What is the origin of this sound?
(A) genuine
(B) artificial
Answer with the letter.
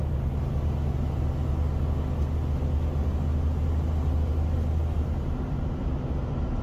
A